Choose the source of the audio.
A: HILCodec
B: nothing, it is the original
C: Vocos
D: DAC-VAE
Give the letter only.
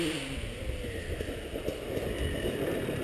B